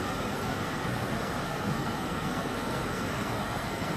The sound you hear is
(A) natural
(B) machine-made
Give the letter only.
B